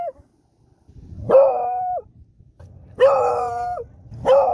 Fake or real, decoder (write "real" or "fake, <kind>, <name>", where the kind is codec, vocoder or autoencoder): real